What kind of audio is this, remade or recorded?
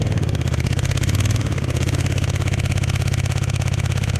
remade